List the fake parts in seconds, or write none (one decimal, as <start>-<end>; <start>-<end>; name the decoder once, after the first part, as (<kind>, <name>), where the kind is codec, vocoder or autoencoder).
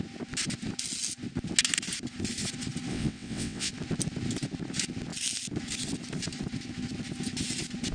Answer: 2.9-3.7 (vocoder, WaveNeXt)